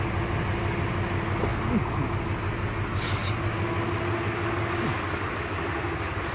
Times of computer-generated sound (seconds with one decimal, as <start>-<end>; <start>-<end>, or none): none

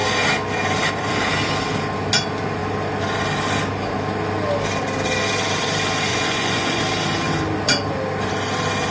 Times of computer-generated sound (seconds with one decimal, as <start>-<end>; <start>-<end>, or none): 6.1-6.8

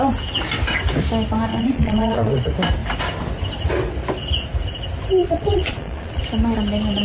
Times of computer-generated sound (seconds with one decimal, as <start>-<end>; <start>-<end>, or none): 1.5-2.3; 5.2-6.2